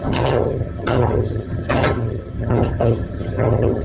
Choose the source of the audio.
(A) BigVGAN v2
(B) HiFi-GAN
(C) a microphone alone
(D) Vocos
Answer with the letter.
B